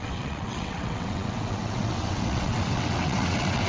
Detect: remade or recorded remade